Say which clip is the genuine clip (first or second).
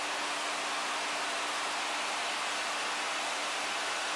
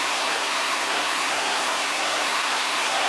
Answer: first